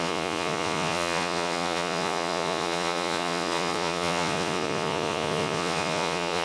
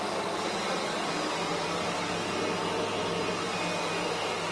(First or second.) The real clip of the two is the second